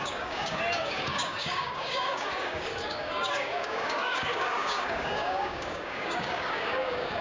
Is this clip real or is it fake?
fake